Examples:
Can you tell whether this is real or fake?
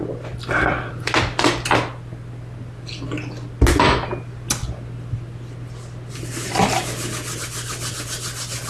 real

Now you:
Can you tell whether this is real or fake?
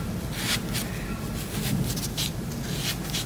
real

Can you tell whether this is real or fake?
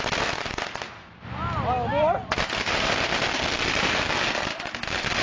real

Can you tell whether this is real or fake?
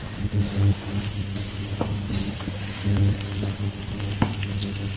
fake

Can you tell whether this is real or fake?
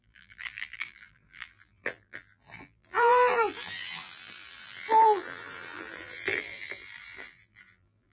fake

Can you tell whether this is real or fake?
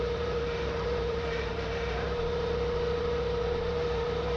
fake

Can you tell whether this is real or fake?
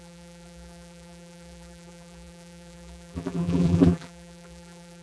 fake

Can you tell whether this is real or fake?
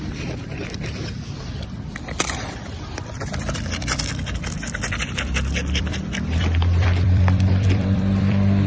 fake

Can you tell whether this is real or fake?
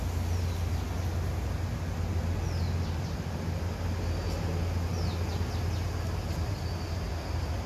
real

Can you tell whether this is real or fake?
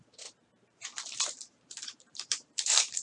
fake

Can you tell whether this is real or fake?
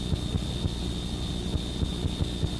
real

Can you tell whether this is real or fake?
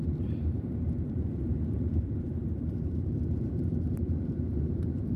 fake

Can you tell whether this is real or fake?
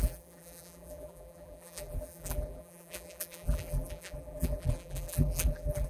fake